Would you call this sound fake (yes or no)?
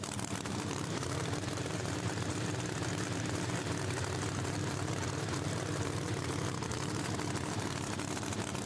yes